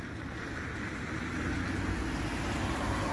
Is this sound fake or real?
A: real